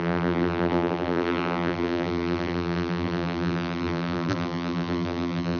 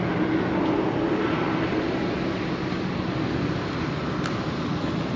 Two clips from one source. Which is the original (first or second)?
second